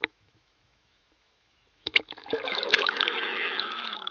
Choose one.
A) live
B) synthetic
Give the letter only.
B